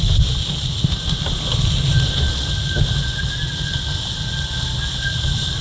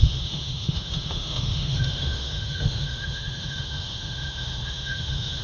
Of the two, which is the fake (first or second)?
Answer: second